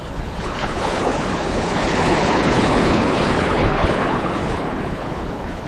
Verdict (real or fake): fake